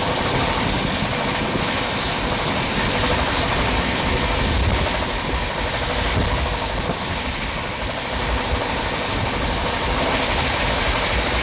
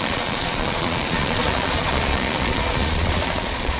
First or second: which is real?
first